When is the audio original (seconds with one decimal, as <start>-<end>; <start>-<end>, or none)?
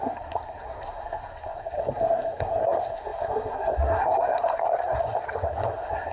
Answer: none